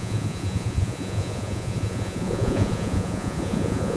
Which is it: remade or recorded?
remade